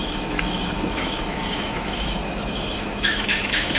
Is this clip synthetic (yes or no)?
yes